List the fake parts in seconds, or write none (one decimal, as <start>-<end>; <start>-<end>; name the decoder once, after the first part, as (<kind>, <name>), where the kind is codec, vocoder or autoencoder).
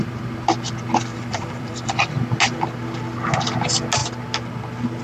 1.1-2.1 (vocoder, BigVGAN v2)